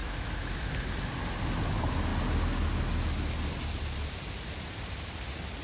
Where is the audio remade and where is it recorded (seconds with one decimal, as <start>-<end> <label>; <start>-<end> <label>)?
0.0-0.7 remade; 0.7-5.6 recorded